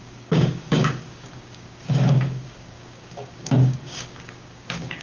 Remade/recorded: remade